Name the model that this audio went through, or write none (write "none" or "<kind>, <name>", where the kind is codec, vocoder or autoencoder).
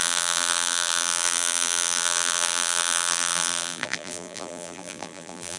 vocoder, BigVGAN v2